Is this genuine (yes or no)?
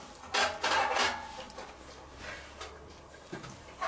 yes